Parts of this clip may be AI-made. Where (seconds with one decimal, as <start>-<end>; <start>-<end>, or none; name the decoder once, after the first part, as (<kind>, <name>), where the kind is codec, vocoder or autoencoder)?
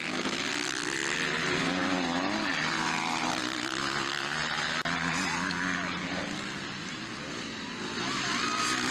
0.0-1.0 (vocoder, BigVGAN v2); 1.6-2.5; 3.4-3.8; 7.3-8.9